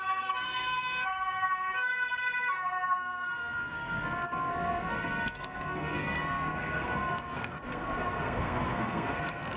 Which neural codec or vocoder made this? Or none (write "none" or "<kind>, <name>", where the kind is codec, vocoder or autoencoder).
codec, SNAC